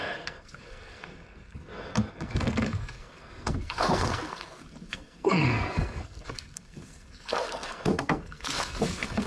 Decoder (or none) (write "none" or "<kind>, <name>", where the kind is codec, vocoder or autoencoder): codec, SNAC